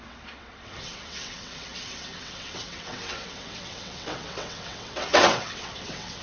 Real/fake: fake